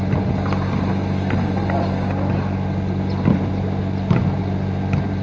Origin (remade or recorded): recorded